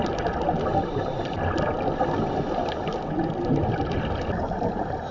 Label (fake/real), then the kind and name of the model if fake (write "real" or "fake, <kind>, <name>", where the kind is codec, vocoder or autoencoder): real